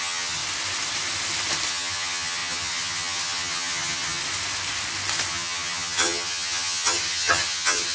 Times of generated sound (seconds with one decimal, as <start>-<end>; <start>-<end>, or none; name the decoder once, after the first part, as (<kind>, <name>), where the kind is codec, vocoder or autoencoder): 0.0-0.4 (vocoder, HiFi-GAN); 1.7-4.2; 5.3-7.9